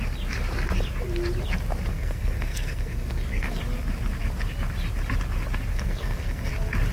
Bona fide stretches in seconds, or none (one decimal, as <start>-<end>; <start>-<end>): 0.0-1.9; 3.6-5.7; 6.5-6.9